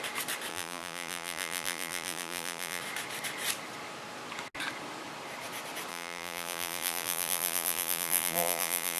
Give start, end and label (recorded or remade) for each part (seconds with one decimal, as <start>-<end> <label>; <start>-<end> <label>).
0.0-0.5 recorded; 0.5-2.8 remade; 2.8-5.9 recorded; 5.9-9.0 remade